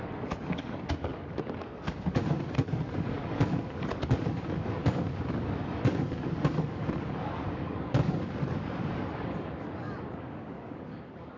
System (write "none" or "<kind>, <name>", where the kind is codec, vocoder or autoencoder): codec, DAC